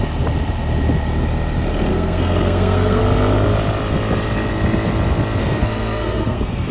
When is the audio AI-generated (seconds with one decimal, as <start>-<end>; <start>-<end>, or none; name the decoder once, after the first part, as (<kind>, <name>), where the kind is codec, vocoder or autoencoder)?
1.9-3.0 (codec, SNAC); 5.4-6.7